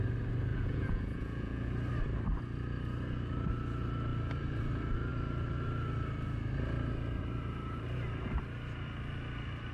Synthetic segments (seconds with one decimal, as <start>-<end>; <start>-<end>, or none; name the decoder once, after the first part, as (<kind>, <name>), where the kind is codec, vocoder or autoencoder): 0.5-1.7 (vocoder, Vocos)

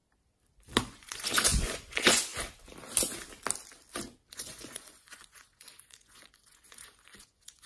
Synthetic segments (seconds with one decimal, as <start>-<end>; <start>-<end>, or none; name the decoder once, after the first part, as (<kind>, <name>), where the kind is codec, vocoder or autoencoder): 0.8-2.3 (vocoder, Vocos); 4.3-7.7